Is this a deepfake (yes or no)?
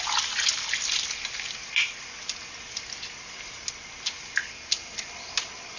no